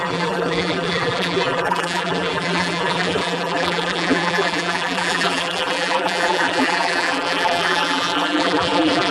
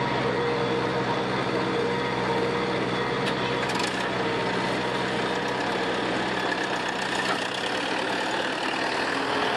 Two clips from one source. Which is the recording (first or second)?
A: second